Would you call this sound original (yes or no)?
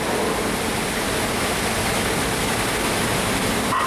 yes